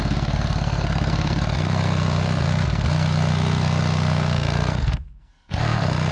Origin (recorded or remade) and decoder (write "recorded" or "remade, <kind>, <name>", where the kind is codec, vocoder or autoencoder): remade, codec, SNAC